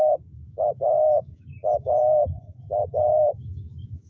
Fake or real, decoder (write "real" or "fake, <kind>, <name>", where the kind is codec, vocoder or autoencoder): fake, autoencoder, DAC-VAE